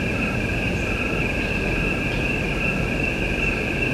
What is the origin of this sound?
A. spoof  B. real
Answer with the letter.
B